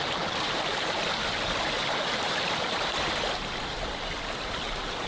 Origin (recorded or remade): recorded